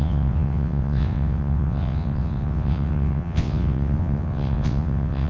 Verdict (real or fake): fake